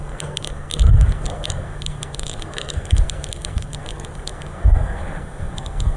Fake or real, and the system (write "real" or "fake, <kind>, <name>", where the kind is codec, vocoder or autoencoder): fake, codec, SNAC